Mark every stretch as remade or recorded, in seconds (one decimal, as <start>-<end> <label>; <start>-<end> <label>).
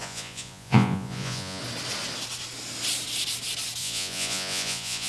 0.0-1.6 remade; 1.6-3.8 recorded; 3.8-5.1 remade